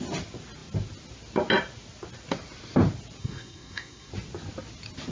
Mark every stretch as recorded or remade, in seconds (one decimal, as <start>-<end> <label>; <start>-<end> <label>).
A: 0.0-3.2 recorded; 3.2-4.1 remade; 4.1-5.1 recorded